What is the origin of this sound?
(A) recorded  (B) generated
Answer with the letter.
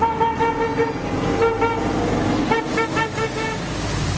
A